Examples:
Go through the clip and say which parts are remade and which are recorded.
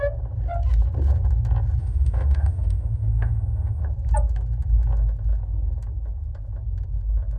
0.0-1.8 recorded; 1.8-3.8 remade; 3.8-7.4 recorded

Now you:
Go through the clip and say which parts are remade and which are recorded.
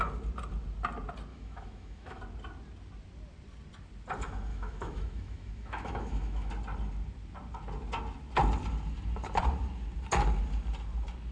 0.0-1.3 recorded; 1.3-2.2 remade; 2.2-4.5 recorded; 4.5-6.5 remade; 6.5-11.3 recorded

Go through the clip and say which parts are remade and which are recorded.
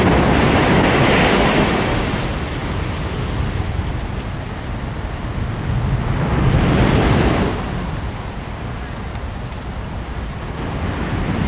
0.0-1.0 recorded; 1.0-1.8 remade; 1.8-11.5 recorded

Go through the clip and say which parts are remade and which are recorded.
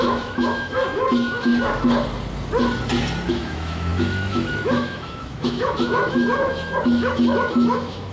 0.0-1.5 remade; 1.5-3.3 recorded; 3.3-8.1 remade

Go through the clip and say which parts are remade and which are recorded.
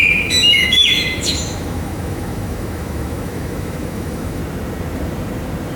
0.0-4.4 remade; 4.4-5.8 recorded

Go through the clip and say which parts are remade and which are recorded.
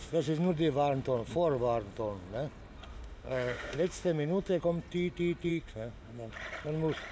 0.0-0.5 remade; 0.5-2.9 recorded; 2.9-4.6 remade; 4.6-5.5 recorded; 5.5-6.3 remade; 6.3-7.1 recorded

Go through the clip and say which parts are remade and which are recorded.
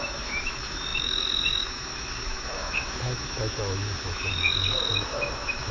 0.0-5.7 remade